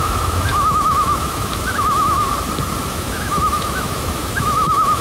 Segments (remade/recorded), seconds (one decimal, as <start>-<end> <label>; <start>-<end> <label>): 0.0-2.3 remade; 2.3-2.9 recorded; 2.9-5.0 remade